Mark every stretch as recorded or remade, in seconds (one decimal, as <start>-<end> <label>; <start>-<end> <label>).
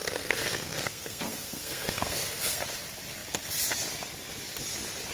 0.0-2.6 remade; 2.6-5.1 recorded